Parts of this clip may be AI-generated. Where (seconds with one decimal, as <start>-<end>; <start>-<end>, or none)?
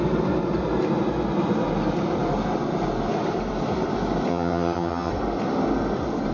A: 4.3-5.1